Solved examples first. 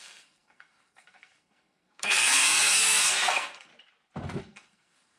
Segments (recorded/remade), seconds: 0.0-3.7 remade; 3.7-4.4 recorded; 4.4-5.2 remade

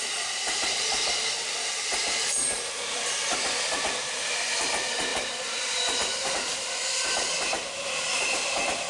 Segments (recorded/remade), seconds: 0.0-2.2 recorded; 2.2-3.8 remade; 3.8-5.1 recorded; 5.1-6.3 remade; 6.3-8.9 recorded

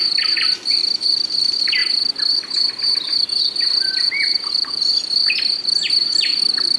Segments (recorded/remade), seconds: 0.0-6.8 recorded